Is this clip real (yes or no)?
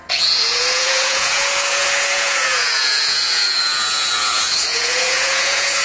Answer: no